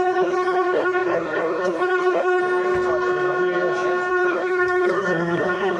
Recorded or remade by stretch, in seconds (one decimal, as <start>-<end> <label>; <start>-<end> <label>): 0.0-2.4 remade; 2.4-4.1 recorded; 4.1-5.8 remade